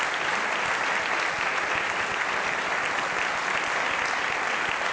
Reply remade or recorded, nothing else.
recorded